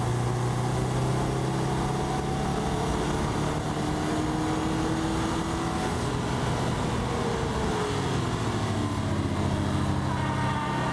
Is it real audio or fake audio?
real